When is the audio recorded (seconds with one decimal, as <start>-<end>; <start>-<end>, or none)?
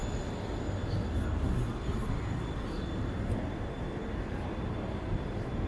0.0-5.7